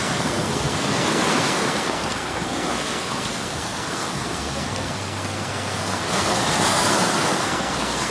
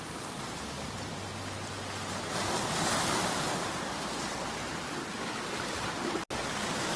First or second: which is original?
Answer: second